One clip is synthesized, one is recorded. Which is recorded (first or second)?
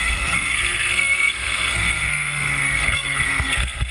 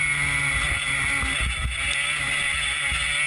second